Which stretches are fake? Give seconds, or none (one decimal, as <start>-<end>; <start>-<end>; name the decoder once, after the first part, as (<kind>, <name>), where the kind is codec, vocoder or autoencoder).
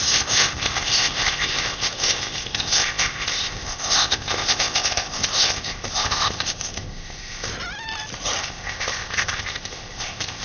0.0-7.5 (codec, ZipCodec); 8.4-10.4